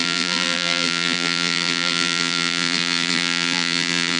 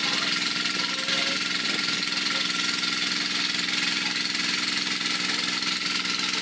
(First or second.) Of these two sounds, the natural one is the second